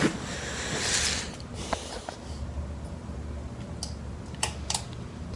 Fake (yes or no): no